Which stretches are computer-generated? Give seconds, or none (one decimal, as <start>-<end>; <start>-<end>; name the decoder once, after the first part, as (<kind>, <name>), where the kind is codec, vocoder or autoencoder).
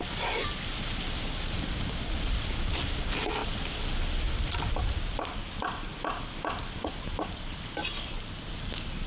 none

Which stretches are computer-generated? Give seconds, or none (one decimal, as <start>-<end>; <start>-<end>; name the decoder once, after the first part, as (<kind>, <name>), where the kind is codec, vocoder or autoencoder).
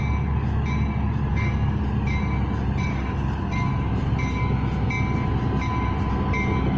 1.3-1.8 (codec, DAC); 2.9-3.7